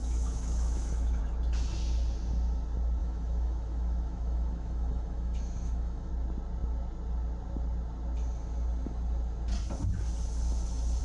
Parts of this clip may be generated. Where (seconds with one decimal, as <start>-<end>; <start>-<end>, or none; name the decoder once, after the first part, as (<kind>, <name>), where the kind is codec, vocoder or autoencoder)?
0.0-1.2 (autoencoder, DAC-VAE); 3.0-6.1